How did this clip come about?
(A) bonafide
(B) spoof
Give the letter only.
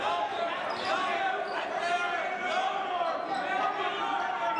A